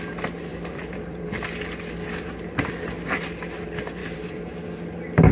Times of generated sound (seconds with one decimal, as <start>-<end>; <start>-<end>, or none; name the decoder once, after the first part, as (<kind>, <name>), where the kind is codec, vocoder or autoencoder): 0.5-1.6 (vocoder, BigVGAN v2); 4.0-4.6